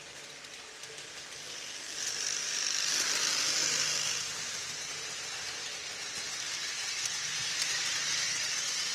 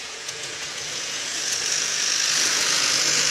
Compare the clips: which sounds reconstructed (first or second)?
second